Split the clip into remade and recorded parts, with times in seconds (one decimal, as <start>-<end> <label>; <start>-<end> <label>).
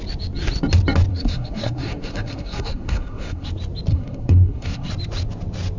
0.0-1.1 recorded; 1.1-3.5 remade; 3.5-3.9 recorded; 3.9-4.9 remade; 4.9-5.8 recorded